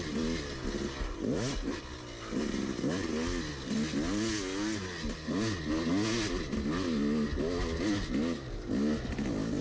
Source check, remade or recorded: recorded